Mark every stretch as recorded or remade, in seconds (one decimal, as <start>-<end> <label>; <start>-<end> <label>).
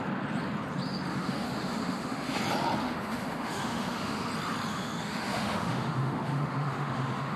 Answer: 0.0-1.1 recorded; 1.1-2.4 remade; 2.4-2.8 recorded; 2.8-4.3 remade; 4.3-4.7 recorded; 4.7-7.4 remade